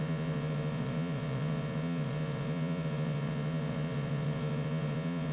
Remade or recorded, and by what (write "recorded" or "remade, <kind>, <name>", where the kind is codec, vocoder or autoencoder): remade, vocoder, Vocos